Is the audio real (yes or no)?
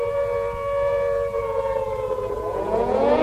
no